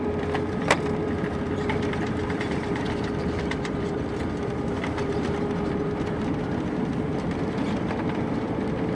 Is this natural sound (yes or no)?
no